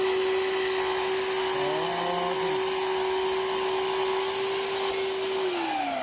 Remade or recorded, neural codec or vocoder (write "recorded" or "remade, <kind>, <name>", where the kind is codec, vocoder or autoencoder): recorded